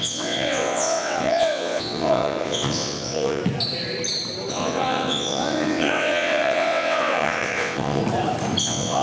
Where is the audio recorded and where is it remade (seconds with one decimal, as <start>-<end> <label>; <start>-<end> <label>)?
0.0-3.4 remade; 3.4-4.5 recorded; 4.5-8.0 remade; 8.0-8.6 recorded; 8.6-9.0 remade